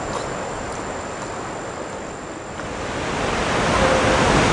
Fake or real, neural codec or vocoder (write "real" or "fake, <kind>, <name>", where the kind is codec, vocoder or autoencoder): real